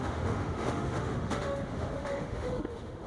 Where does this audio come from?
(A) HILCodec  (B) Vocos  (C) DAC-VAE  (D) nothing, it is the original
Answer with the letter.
C